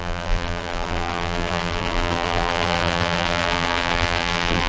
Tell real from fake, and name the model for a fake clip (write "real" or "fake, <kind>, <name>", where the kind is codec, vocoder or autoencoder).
fake, vocoder, BigVGAN v2